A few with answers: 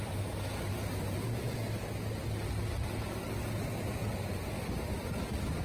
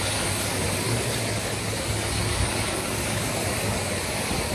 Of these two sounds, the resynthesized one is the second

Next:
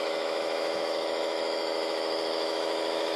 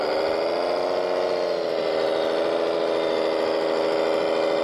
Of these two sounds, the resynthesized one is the first